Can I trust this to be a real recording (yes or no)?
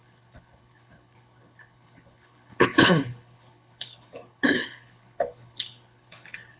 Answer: no